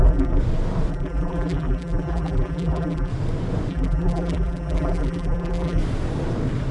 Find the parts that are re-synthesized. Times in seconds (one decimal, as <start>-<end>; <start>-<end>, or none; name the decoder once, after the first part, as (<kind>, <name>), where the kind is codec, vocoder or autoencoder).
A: 0.0-0.4 (vocoder, BigVGAN v2); 0.9-3.1; 3.7-5.8